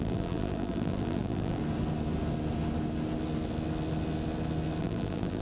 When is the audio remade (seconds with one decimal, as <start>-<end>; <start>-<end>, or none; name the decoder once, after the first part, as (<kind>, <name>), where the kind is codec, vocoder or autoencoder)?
0.0-1.6 (vocoder, BigVGAN v2); 4.8-5.4